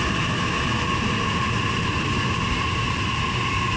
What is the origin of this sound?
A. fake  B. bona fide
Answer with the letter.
B